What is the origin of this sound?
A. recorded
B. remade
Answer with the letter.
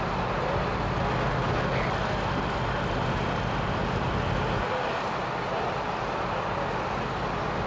A